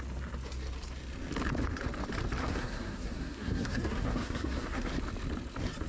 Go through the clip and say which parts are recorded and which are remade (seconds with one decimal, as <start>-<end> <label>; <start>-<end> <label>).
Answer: 0.0-2.4 recorded; 2.4-4.9 remade; 4.9-5.9 recorded